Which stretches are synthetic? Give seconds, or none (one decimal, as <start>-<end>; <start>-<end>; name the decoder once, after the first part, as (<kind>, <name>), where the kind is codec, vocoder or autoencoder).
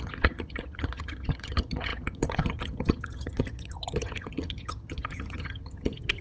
0.0-6.2 (vocoder, HiFi-GAN)